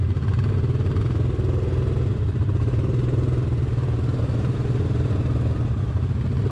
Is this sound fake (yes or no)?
no